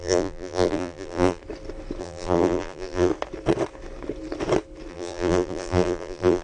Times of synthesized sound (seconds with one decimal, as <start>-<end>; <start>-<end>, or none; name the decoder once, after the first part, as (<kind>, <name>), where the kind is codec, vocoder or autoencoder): 0.0-1.4 (vocoder, BigVGAN v2); 2.0-3.1; 4.9-6.4